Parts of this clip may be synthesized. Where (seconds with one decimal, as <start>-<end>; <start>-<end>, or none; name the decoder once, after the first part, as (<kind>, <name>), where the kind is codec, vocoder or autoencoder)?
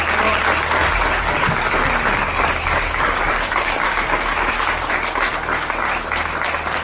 0.8-4.9 (codec, DAC)